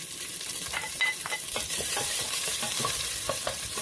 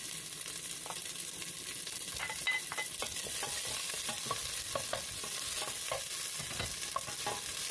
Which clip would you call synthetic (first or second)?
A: first